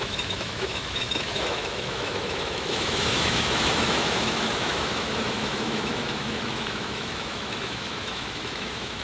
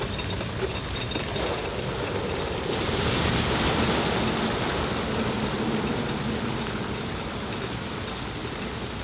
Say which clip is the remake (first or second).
first